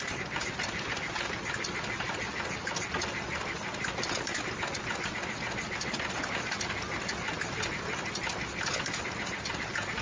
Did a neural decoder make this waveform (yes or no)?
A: no